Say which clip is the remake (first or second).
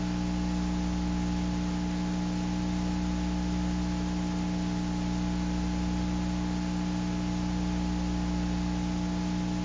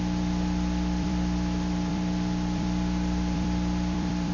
second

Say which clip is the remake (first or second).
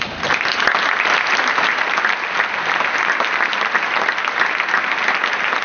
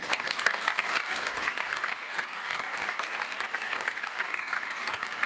second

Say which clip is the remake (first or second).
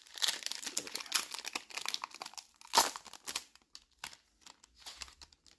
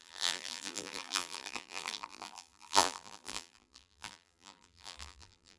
second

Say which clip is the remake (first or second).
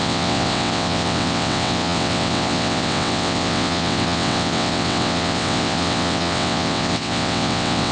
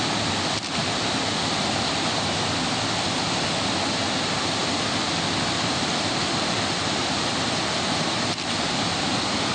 first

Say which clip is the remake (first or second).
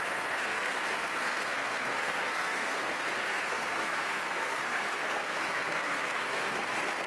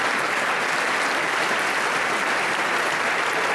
first